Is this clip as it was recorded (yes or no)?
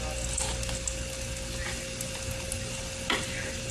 yes